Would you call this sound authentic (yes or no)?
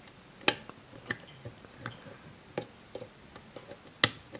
yes